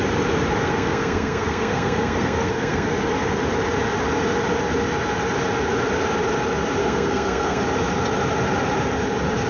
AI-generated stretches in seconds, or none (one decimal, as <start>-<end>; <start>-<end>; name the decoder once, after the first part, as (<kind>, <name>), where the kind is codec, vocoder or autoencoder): 0.6-2.9 (codec, SNAC); 6.8-7.6